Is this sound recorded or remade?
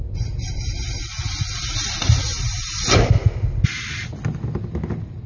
recorded